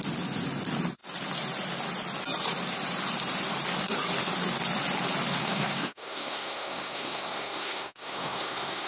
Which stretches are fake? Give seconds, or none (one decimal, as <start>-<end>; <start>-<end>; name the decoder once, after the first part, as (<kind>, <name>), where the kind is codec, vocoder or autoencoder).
5.4-8.9 (codec, SNAC)